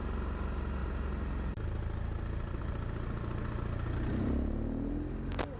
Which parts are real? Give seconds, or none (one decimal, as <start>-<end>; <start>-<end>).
0.0-5.6